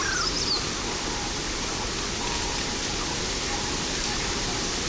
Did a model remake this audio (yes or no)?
no